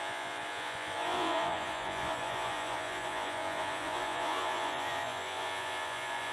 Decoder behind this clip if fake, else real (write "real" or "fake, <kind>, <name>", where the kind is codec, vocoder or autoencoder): fake, vocoder, Vocos